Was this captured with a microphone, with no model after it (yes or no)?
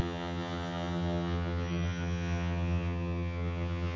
no